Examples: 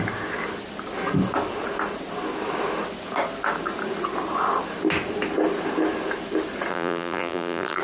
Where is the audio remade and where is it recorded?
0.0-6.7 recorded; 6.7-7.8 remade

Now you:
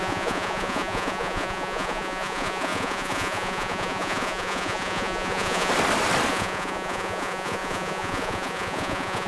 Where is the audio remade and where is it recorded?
0.0-5.7 remade; 5.7-6.3 recorded; 6.3-9.3 remade